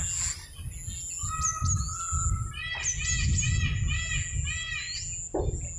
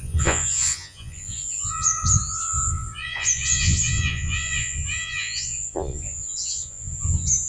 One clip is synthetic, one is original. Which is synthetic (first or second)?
second